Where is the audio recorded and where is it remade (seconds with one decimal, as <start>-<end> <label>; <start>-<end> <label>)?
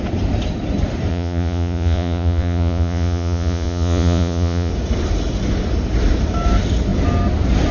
0.0-1.1 recorded; 1.1-4.7 remade; 4.7-7.7 recorded